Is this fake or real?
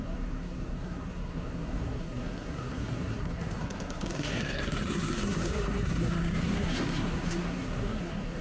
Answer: fake